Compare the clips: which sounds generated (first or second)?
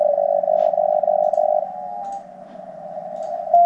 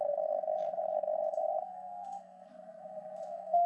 second